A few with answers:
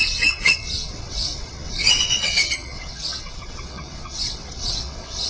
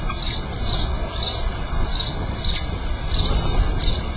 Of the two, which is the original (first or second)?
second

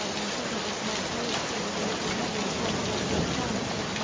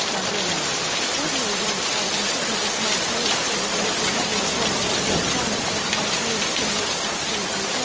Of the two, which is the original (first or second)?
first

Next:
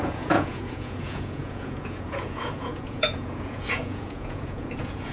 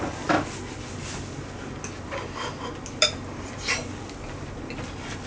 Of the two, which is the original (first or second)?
second